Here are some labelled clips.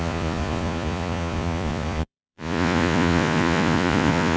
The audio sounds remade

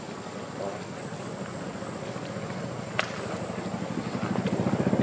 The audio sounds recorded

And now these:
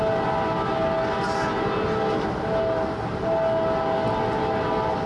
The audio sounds recorded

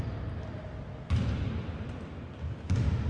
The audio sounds recorded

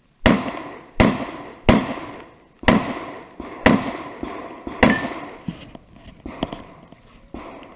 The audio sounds recorded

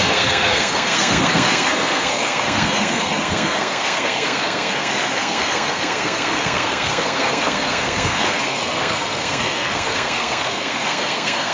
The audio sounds remade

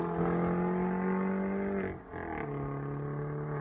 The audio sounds recorded